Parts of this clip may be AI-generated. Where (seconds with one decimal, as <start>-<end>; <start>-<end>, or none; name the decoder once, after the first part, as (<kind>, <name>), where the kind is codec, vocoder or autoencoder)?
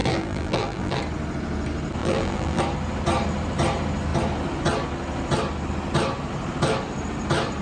0.0-1.0 (vocoder, BigVGAN v2); 2.0-2.6